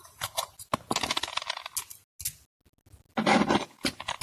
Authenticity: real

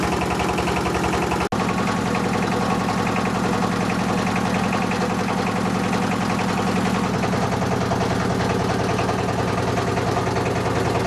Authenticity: real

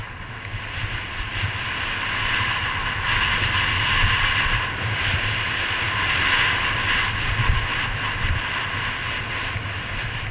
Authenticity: real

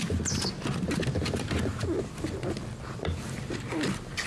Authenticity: real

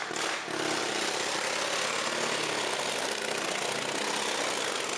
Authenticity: real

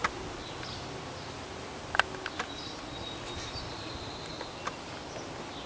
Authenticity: real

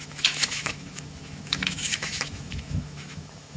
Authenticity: fake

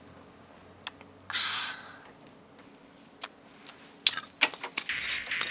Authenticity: real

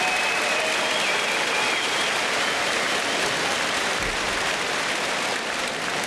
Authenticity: real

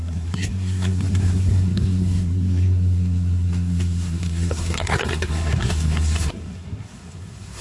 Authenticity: fake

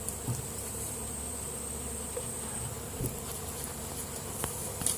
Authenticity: real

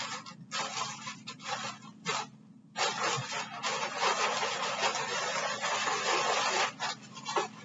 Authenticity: real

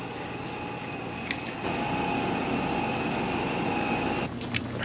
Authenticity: real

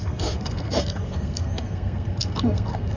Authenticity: fake